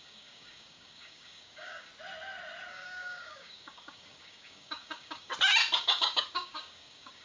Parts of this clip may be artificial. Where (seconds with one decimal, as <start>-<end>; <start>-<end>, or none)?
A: 0.0-1.9; 2.7-5.3; 5.8-7.2

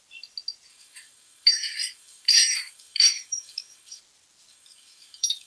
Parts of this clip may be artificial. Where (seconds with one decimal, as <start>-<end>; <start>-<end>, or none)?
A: 0.7-4.0; 4.5-5.5

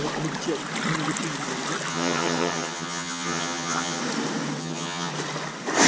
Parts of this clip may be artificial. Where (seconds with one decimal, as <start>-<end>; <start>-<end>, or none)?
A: 1.9-4.0; 4.6-5.1